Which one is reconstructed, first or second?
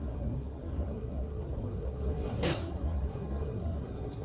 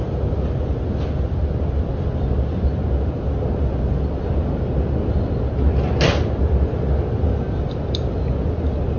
first